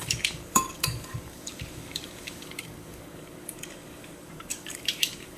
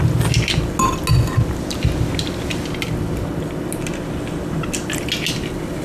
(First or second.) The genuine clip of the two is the second